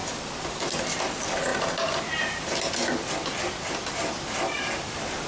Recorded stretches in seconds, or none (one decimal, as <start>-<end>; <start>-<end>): 0.0-5.3

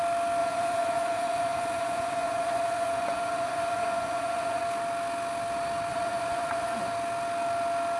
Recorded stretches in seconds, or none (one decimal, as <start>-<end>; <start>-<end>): 0.0-0.4; 4.6-5.9; 6.9-8.0

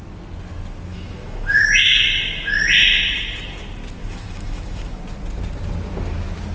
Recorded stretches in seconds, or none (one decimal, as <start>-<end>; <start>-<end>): 0.0-0.9; 2.6-4.0; 5.0-6.5

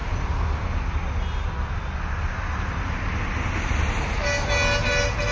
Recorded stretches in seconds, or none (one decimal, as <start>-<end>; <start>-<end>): 0.0-5.3

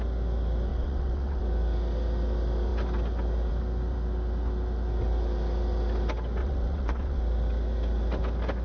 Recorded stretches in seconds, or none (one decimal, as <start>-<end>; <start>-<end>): 0.0-0.7; 1.4-6.4; 7.2-8.6

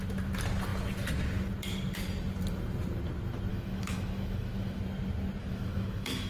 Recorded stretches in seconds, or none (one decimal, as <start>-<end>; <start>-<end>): 0.0-3.5; 4.8-5.4